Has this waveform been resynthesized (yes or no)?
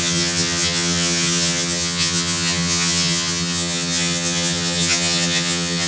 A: yes